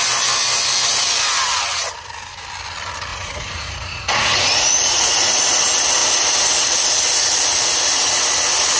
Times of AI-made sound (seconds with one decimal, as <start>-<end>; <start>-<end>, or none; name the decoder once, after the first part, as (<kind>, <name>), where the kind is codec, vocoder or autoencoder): 3.1-5.4 (vocoder, Vocos)